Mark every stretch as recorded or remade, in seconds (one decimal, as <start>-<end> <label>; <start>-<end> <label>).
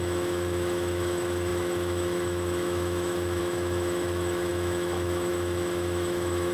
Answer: 0.0-6.5 remade